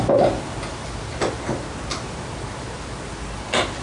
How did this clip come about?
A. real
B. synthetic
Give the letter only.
A